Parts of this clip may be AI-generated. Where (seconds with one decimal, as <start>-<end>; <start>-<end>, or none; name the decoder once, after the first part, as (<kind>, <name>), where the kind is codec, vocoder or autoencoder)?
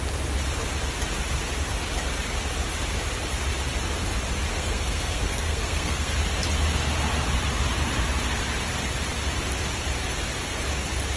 4.5-6.1 (codec, SNAC)